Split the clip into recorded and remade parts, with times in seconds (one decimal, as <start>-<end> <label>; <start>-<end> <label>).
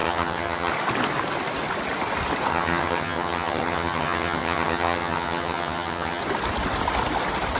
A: 0.0-0.7 remade; 0.7-2.5 recorded; 2.5-6.2 remade; 6.2-7.6 recorded